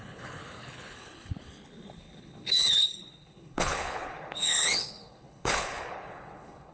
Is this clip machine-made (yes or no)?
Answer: yes